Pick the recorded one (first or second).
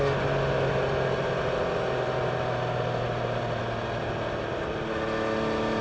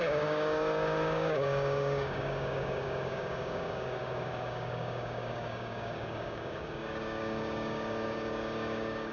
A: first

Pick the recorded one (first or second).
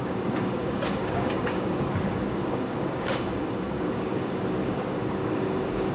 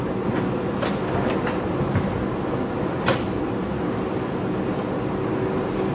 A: second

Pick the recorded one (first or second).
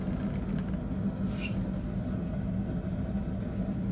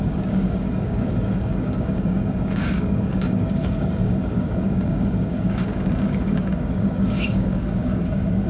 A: first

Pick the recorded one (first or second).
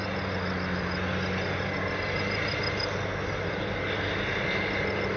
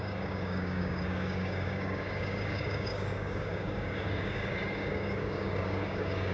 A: first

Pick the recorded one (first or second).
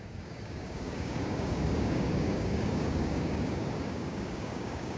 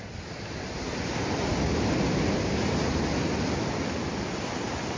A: second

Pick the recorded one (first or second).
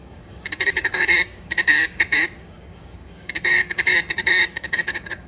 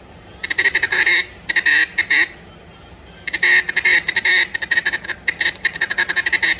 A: second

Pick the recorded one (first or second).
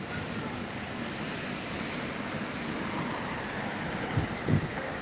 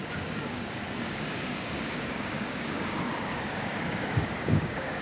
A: first